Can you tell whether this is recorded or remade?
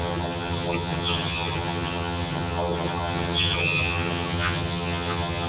remade